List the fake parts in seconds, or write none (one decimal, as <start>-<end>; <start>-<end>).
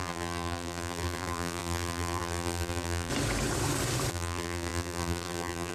0.0-3.1; 4.1-5.7